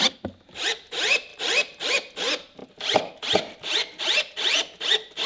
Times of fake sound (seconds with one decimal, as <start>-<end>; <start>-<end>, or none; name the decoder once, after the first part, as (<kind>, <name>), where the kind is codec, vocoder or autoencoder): 1.3-1.9 (vocoder, BigVGAN v2)